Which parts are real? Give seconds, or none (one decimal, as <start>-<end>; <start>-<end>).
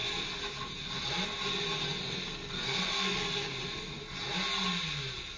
0.0-2.0; 3.5-5.4